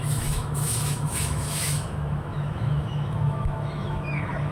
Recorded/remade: remade